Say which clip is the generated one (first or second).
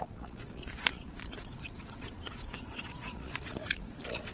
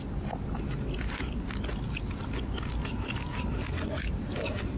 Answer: first